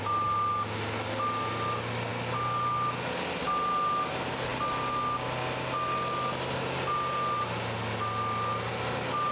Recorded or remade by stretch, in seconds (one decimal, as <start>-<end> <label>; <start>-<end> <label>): 0.0-9.3 recorded